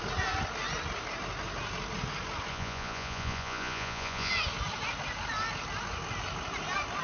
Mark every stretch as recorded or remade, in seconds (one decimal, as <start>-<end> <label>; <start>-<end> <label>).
0.0-2.5 recorded; 2.5-4.3 remade; 4.3-7.0 recorded

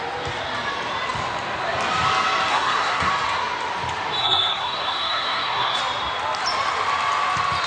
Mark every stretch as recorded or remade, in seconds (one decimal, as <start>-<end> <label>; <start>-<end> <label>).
0.0-2.5 recorded; 2.5-3.1 remade; 3.1-4.2 recorded; 4.2-5.8 remade; 5.8-7.7 recorded

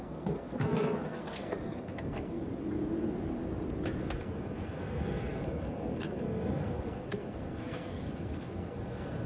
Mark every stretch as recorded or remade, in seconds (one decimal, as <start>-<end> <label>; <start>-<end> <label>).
0.0-2.4 remade; 2.4-4.0 recorded; 4.0-9.3 remade

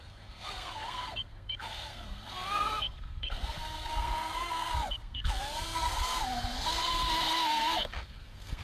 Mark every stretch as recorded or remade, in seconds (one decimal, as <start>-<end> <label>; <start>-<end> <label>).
0.0-8.6 remade

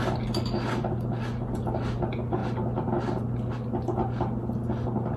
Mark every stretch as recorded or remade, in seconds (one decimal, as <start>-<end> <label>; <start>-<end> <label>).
0.0-5.2 recorded